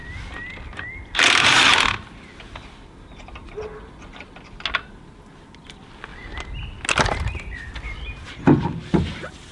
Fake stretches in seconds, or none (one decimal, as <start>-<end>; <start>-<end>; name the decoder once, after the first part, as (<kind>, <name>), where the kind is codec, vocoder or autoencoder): none